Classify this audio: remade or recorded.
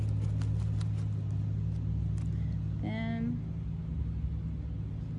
recorded